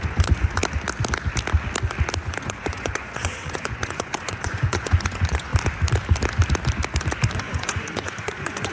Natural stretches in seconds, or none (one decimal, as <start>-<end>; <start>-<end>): 0.6-2.4; 5.5-7.3